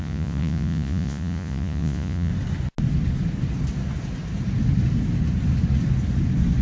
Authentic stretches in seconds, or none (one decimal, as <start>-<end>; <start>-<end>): 2.3-6.6